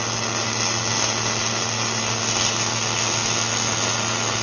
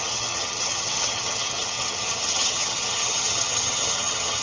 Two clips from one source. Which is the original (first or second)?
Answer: first